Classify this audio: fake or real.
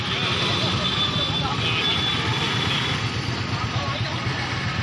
real